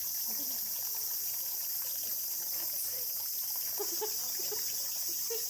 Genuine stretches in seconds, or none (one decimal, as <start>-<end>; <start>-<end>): 0.0-1.0; 1.9-5.5